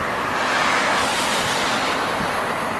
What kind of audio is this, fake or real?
real